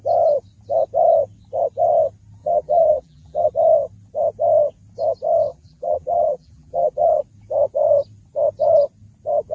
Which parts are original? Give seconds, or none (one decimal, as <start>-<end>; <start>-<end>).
0.0-2.4; 3.5-5.5; 7.2-9.5